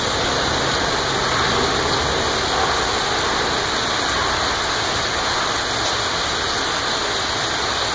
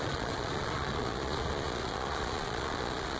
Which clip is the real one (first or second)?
first